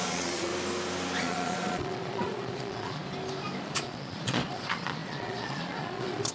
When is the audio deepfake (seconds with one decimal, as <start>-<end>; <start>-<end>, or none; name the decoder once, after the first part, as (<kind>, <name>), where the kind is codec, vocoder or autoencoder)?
0.0-0.5 (vocoder, Vocos); 1.2-3.0; 3.6-6.3